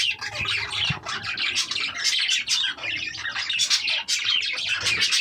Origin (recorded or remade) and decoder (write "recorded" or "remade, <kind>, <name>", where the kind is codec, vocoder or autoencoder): recorded